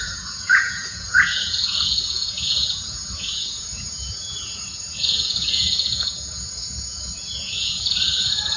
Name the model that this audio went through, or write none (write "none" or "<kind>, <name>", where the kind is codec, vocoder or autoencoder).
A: vocoder, Vocos